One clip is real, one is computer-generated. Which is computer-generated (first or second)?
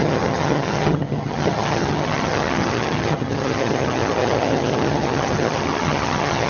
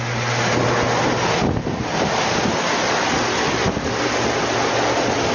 first